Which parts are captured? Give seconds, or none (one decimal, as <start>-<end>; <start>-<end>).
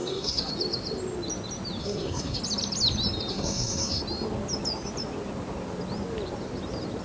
0.5-1.8; 2.4-3.3; 4.0-7.0